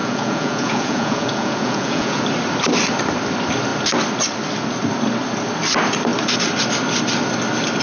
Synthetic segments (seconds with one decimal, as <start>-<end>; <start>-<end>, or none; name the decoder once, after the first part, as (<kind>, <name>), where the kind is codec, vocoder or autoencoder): 0.0-2.2 (vocoder, Vocos)